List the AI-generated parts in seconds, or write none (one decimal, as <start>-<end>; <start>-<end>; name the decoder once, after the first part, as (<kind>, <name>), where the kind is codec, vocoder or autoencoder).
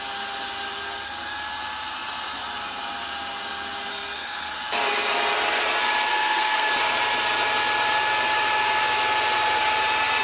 3.9-4.6 (codec, SNAC); 6.1-6.7